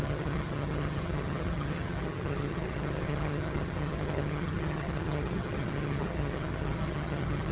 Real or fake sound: fake